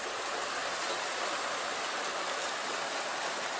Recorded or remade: recorded